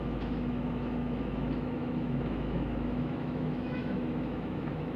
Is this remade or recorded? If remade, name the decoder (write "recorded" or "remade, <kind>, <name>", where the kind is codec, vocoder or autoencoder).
remade, autoencoder, DAC-VAE